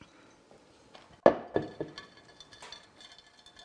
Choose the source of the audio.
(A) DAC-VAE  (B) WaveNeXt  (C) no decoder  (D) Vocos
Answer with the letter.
C